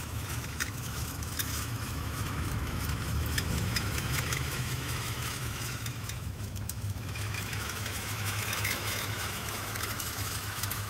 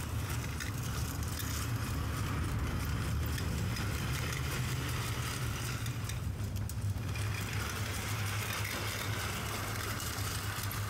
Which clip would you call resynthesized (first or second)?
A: first